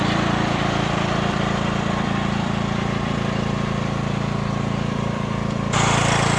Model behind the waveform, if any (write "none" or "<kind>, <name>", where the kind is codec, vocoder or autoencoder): vocoder, BigVGAN v2